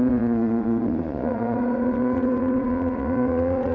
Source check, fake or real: fake